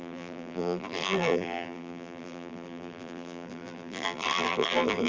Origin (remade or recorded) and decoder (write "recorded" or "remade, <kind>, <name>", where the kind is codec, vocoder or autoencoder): remade, vocoder, BigVGAN v2